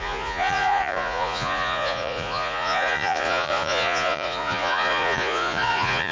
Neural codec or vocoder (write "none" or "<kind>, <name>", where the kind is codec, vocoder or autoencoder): vocoder, Vocos